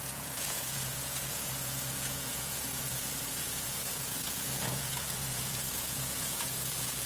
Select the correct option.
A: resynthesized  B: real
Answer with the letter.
A